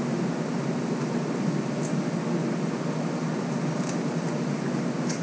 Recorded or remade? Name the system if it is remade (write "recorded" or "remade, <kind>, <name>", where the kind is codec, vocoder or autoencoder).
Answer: recorded